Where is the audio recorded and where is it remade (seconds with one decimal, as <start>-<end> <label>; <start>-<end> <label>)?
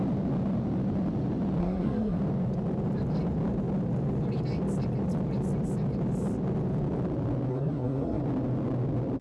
0.0-1.6 recorded; 1.6-2.2 remade; 2.2-7.5 recorded; 7.5-8.2 remade; 8.2-9.2 recorded